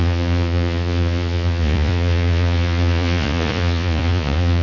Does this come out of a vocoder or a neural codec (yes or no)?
yes